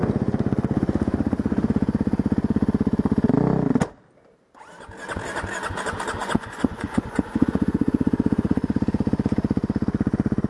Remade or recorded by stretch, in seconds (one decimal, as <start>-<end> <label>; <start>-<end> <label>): 0.0-6.2 recorded; 6.2-8.8 remade; 8.8-10.5 recorded